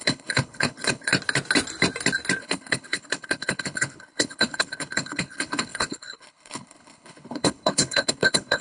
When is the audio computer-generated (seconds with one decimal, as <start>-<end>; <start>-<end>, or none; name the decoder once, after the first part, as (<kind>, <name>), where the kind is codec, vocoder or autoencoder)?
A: 0.0-1.1 (codec, HILCodec); 2.4-8.6